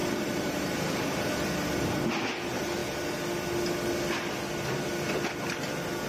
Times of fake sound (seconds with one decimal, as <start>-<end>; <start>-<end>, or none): 0.0-1.3